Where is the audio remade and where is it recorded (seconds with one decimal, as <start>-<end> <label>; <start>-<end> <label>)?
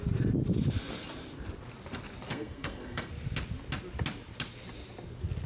0.0-2.3 recorded; 2.3-3.1 remade; 3.1-5.5 recorded